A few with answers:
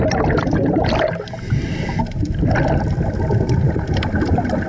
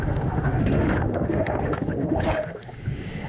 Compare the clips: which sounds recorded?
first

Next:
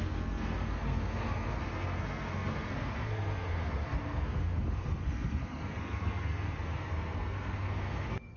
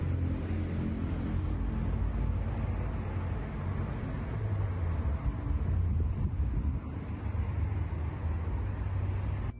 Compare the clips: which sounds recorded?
second